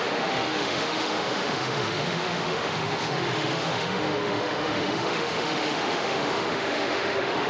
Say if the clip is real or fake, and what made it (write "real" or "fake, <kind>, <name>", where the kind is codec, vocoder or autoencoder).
fake, autoencoder, DAC-VAE